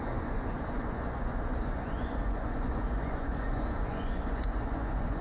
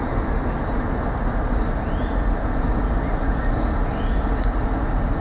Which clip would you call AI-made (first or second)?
first